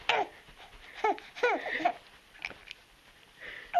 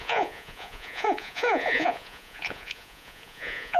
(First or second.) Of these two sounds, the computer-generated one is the second